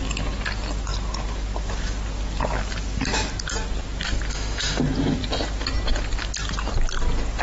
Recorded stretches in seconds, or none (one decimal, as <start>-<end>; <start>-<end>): 0.0-4.3; 4.8-7.4